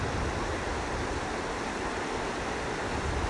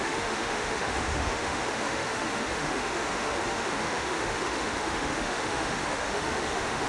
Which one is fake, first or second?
second